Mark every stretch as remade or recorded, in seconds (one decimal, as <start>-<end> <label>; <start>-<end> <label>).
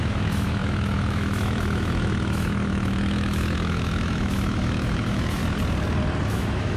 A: 0.0-5.4 remade; 5.4-6.2 recorded; 6.2-6.8 remade